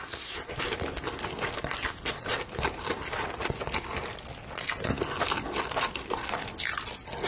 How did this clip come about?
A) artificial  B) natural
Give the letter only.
B